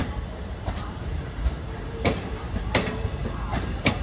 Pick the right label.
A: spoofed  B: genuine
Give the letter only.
A